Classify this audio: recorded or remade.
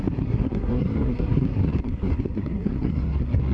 remade